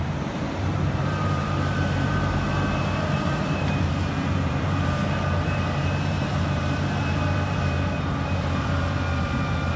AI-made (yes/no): yes